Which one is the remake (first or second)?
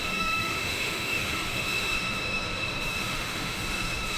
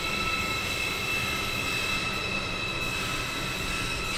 first